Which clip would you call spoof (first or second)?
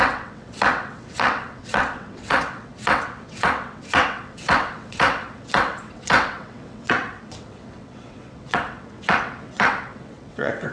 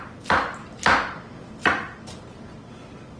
first